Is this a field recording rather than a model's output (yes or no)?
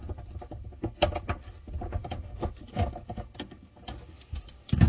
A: yes